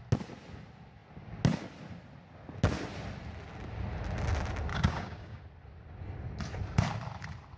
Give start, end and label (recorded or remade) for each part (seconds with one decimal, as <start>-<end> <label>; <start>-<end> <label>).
0.0-4.7 recorded; 4.7-5.4 remade; 5.4-7.6 recorded